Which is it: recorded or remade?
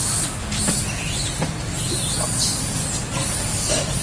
recorded